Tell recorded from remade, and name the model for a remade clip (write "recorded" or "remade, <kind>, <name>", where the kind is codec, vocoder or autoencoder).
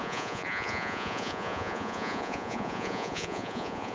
remade, vocoder, Vocos